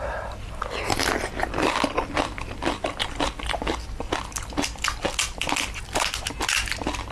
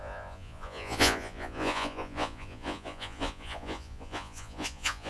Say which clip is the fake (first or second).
second